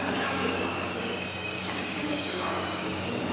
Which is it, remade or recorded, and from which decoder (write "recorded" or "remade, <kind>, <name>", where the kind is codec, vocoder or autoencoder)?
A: remade, codec, DAC